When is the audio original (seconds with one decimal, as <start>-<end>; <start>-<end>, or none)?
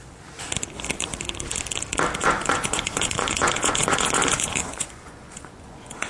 0.0-2.2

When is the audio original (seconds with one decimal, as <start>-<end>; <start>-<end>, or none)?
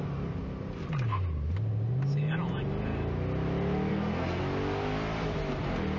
0.0-3.9; 4.4-6.0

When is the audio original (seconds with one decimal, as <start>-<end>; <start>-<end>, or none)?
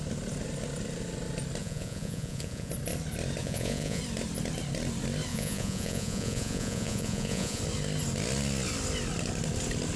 0.0-1.6; 2.7-3.4; 4.0-5.3; 7.6-10.0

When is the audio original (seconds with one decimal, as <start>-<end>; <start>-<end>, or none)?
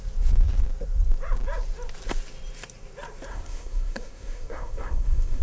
0.0-3.3